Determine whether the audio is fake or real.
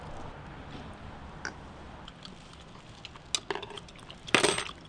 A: real